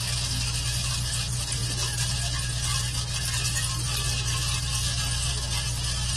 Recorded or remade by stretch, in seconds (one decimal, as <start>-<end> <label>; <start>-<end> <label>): 0.0-6.2 recorded